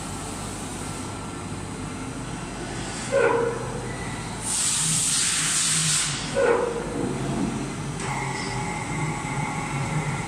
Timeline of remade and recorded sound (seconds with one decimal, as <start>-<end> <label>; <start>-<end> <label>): 0.0-10.3 recorded